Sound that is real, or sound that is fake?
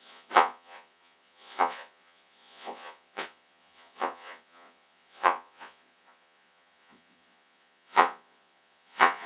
fake